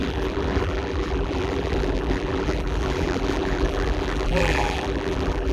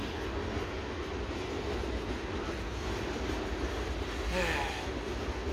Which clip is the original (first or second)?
second